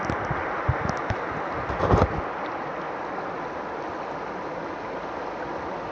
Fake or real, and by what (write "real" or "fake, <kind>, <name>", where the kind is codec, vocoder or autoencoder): real